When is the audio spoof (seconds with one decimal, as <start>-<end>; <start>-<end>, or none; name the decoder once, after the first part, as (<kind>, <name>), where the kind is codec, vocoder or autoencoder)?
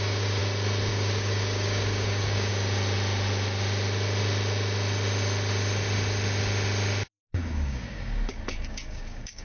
0.0-0.4 (codec, DAC); 0.9-2.5; 7.3-9.4